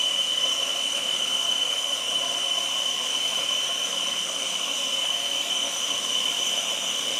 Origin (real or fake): fake